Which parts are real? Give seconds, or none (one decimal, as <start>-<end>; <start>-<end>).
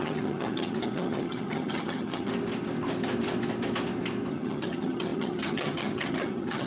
2.3-4.3